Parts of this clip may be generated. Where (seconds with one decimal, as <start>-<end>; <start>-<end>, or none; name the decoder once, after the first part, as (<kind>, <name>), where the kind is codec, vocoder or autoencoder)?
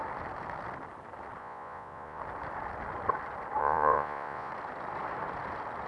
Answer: 1.4-2.2 (vocoder, Vocos); 3.6-4.5